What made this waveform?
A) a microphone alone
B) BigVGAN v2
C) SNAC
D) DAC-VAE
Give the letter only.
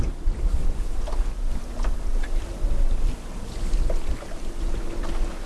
A